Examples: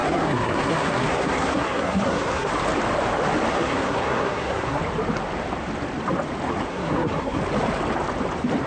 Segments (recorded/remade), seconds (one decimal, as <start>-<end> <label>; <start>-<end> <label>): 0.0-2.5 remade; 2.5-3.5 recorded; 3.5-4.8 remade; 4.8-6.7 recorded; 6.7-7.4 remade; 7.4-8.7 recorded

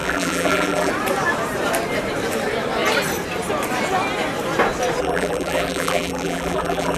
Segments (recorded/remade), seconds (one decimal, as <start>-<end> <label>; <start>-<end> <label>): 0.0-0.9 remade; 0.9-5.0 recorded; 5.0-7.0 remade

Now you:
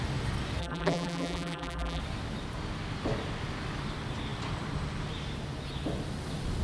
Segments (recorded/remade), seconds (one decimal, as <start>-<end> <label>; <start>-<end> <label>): 0.0-0.6 recorded; 0.6-2.0 remade; 2.0-6.6 recorded